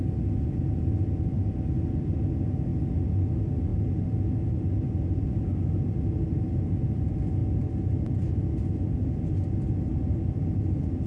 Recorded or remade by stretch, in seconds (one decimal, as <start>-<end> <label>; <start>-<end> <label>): 0.0-11.1 recorded